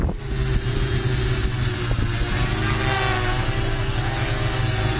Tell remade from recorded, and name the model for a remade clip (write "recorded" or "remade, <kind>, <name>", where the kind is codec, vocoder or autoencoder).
recorded